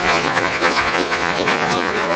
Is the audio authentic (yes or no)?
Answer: no